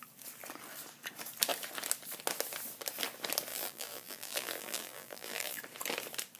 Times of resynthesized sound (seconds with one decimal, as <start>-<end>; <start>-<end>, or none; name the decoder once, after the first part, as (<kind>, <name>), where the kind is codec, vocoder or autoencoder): 3.5-5.6 (vocoder, BigVGAN v2)